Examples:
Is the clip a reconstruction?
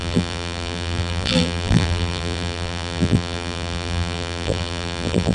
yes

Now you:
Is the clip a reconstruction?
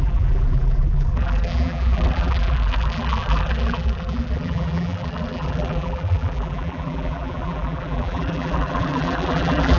yes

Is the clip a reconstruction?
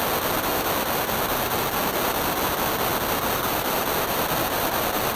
no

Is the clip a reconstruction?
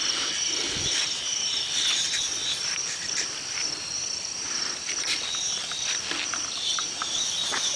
yes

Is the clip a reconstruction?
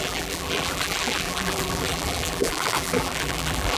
yes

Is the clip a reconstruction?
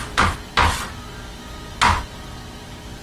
no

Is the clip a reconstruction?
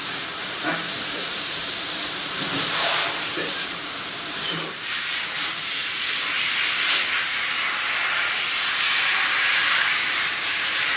yes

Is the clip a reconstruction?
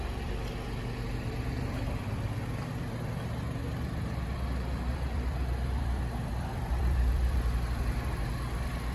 yes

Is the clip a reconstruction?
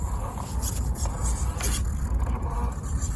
yes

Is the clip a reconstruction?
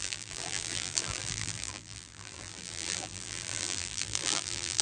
yes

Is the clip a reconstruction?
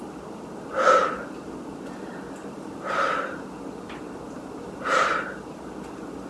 no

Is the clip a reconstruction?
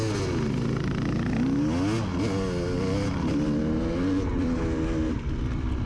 no